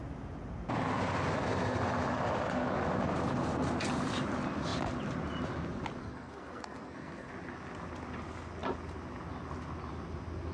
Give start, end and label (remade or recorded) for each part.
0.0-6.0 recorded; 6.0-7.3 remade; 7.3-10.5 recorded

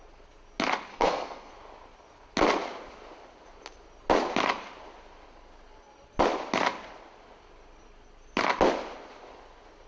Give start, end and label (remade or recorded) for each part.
0.0-0.9 recorded; 0.9-1.5 remade; 1.5-9.9 recorded

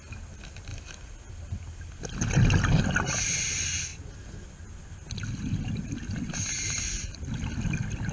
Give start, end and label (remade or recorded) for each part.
0.0-8.1 recorded

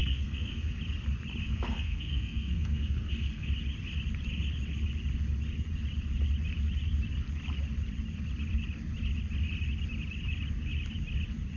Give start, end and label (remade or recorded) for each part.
0.0-0.8 remade; 0.8-1.4 recorded; 1.4-3.5 remade; 3.5-11.6 recorded